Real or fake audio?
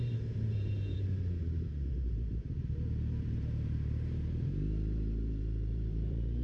fake